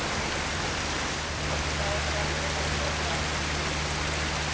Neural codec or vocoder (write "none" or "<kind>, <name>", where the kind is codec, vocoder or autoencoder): none